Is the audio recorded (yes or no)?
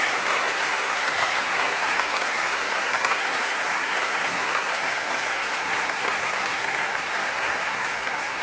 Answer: no